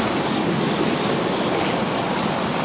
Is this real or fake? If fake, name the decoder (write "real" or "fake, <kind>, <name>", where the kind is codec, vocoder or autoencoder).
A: real